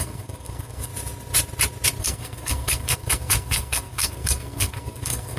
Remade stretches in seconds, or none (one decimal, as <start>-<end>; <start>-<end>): 0.0-0.9; 2.0-5.4